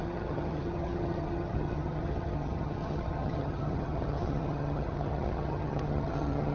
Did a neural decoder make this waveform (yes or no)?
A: yes